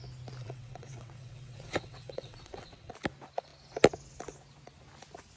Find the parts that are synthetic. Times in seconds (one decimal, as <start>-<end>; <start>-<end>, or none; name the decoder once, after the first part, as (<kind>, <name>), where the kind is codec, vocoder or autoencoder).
0.4-2.9 (vocoder, WaveNeXt)